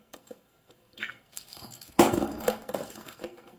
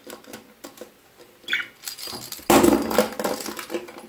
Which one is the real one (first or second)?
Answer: second